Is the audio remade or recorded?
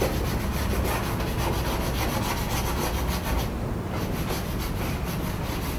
recorded